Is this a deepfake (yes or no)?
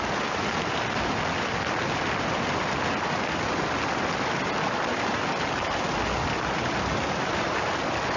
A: no